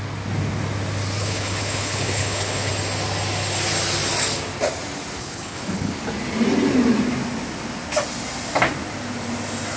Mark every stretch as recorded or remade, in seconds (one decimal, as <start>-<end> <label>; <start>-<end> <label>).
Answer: 0.0-1.2 recorded; 1.2-2.7 remade; 2.7-5.2 recorded; 5.2-5.9 remade; 5.9-9.8 recorded